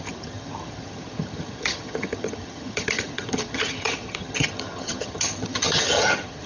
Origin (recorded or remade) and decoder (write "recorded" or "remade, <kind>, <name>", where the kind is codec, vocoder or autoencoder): remade, vocoder, HiFi-GAN